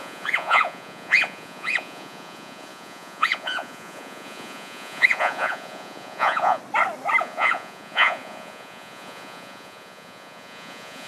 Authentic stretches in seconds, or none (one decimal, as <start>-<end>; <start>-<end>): 6.6-7.2